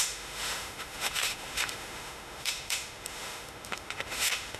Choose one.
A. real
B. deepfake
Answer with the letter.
B